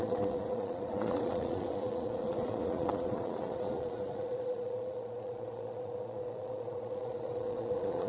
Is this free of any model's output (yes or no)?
no